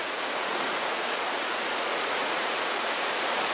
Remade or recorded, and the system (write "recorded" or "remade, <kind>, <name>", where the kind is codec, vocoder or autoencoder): remade, vocoder, Vocos